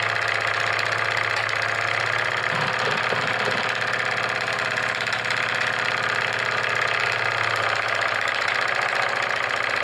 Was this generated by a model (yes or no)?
no